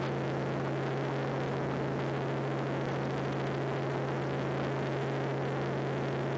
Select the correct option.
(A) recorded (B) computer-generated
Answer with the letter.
A